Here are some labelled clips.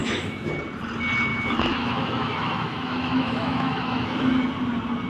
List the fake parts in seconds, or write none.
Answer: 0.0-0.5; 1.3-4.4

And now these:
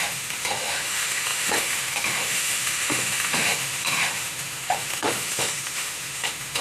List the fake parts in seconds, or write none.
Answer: 0.0-6.6